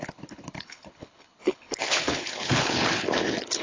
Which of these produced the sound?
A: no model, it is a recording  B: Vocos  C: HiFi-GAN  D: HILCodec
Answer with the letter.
D